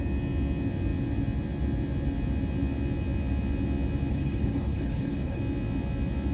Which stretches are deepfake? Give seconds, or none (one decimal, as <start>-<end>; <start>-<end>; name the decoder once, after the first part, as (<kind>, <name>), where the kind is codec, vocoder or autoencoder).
4.1-5.4 (codec, HILCodec)